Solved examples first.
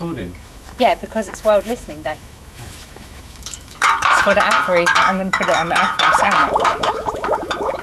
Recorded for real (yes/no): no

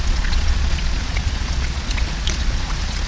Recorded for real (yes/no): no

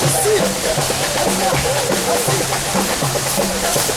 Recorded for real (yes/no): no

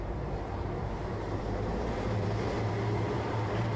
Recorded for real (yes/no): no